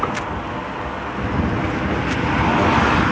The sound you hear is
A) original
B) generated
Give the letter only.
A